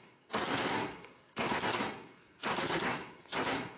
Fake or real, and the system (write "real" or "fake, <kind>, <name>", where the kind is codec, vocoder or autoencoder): fake, codec, SNAC